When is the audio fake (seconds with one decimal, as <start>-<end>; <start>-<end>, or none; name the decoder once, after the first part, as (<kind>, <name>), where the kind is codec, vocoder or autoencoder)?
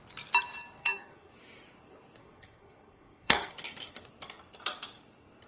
0.8-1.3 (codec, SNAC); 2.2-3.5